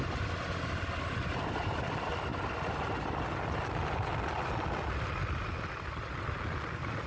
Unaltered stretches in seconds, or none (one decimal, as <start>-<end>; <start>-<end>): 0.0-7.1